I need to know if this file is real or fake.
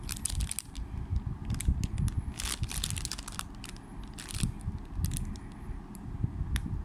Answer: real